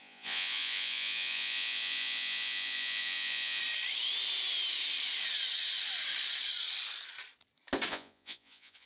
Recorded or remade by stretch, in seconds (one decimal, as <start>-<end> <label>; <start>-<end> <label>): 0.0-3.6 remade; 3.6-7.9 recorded; 7.9-8.9 remade